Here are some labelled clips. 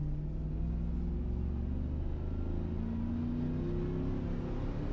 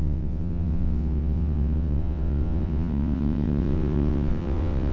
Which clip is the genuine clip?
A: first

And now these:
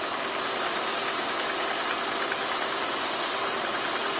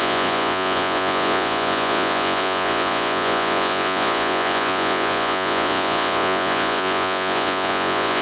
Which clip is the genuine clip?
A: first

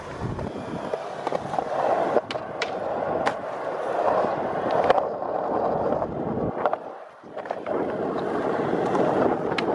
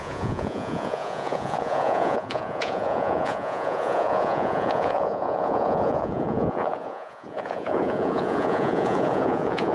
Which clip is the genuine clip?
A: first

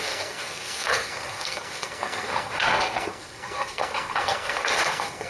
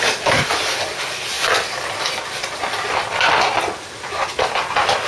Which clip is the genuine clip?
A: second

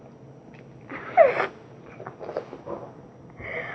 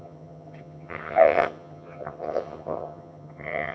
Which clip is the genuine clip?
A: first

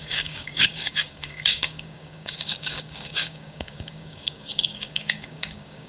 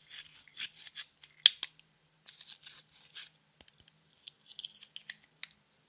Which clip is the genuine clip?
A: second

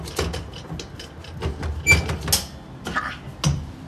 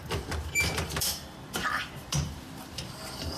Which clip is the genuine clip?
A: first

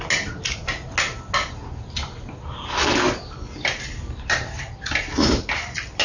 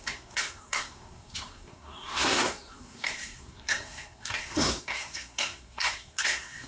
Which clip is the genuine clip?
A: first